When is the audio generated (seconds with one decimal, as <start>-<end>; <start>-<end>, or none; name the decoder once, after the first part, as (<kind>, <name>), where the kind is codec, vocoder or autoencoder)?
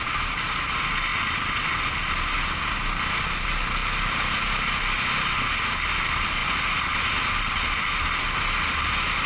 none